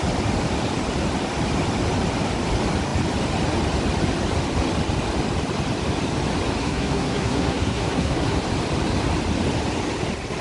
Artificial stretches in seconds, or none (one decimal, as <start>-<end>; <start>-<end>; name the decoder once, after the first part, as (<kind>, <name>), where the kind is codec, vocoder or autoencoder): 6.6-8.4 (codec, SNAC)